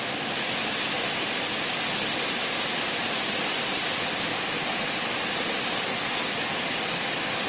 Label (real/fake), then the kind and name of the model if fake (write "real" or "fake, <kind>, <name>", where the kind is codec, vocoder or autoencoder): real